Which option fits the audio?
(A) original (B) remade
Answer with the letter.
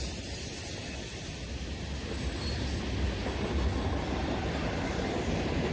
A